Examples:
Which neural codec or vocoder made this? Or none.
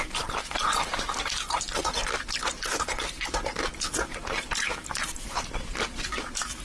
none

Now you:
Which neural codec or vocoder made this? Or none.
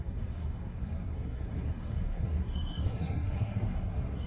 codec, SNAC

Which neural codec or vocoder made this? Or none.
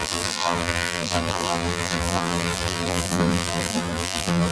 vocoder, BigVGAN v2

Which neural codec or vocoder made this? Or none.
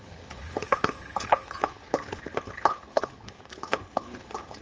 codec, HILCodec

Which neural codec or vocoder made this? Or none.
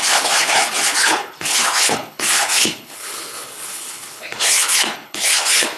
codec, HILCodec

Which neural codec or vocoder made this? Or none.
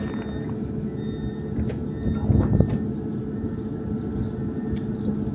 none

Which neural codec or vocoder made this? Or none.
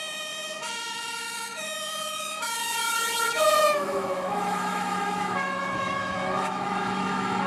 autoencoder, DAC-VAE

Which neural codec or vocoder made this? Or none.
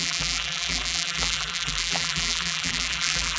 vocoder, BigVGAN v2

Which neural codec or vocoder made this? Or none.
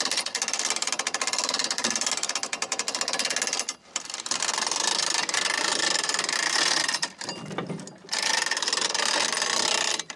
none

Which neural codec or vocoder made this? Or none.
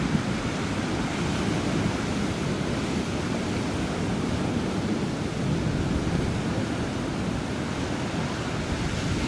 none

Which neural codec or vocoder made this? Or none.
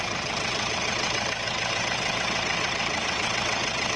vocoder, WaveNeXt